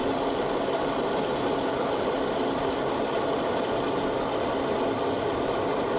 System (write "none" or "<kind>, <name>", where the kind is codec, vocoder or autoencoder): none